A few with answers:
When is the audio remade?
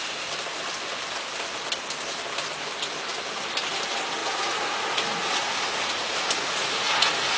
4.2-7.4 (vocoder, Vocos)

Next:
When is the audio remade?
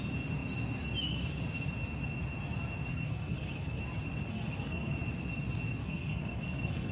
2.9-3.8 (codec, SNAC); 4.3-4.9; 5.8-6.9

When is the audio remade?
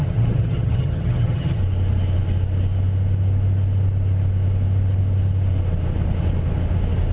0.0-1.6 (vocoder, HiFi-GAN)